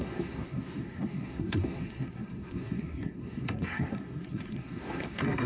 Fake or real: fake